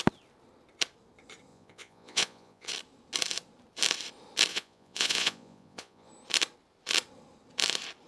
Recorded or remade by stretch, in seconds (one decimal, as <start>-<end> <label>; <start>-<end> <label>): 0.0-1.5 recorded; 1.5-2.7 remade; 2.7-4.5 recorded; 4.5-6.1 remade; 6.1-8.1 recorded